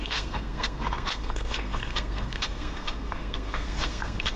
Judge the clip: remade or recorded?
remade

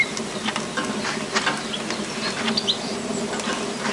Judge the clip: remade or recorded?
recorded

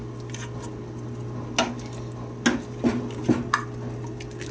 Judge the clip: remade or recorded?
recorded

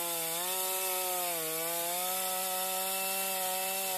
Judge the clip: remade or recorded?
recorded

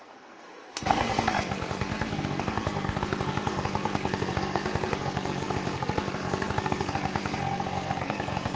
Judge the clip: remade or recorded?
remade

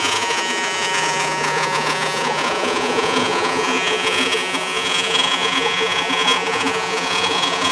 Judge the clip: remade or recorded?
remade